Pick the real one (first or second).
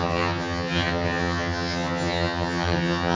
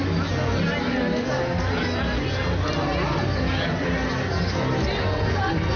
second